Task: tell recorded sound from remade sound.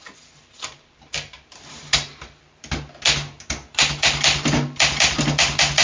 remade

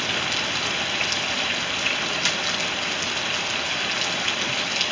recorded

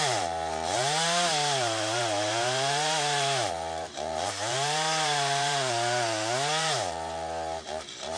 remade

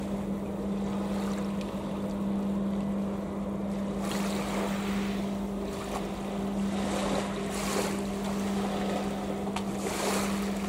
recorded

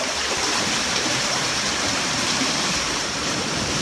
remade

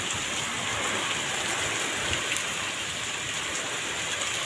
recorded